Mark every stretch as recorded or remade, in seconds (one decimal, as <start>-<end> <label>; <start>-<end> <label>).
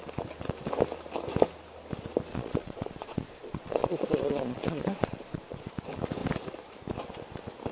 0.0-2.3 recorded; 2.3-5.7 remade; 5.7-7.7 recorded